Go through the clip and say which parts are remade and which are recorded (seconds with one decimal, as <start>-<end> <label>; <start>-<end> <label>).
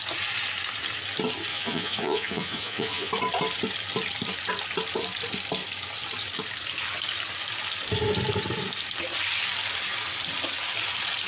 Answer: 0.0-1.5 recorded; 1.5-3.1 remade; 3.1-11.3 recorded